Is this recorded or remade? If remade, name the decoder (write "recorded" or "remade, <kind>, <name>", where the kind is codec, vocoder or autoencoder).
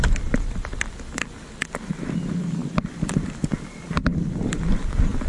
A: recorded